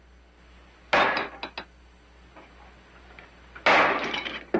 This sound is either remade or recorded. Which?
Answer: recorded